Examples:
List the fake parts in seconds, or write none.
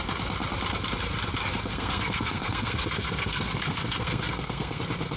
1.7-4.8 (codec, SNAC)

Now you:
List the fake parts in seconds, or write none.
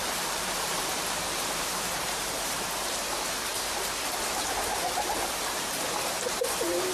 0.0-3.5 (vocoder, BigVGAN v2); 5.3-6.9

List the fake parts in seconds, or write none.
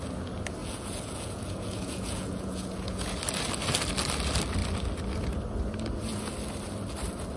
0.6-3.1 (vocoder, Vocos)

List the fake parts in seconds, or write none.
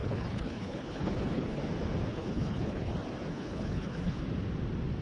0.0-1.6 (codec, HILCodec); 2.1-2.9; 3.3-4.2